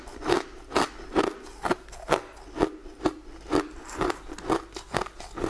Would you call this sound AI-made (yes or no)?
no